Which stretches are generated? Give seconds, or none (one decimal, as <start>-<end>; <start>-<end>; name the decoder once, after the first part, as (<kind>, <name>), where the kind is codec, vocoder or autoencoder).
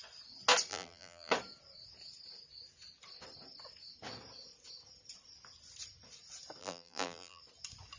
0.7-1.3 (vocoder, BigVGAN v2); 6.6-7.4